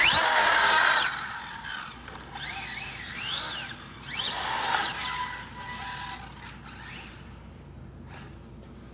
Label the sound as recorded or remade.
recorded